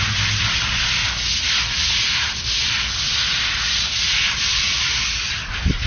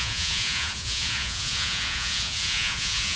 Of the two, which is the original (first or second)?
first